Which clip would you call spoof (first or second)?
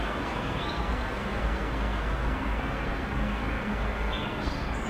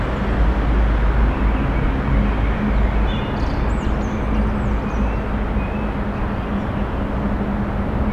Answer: first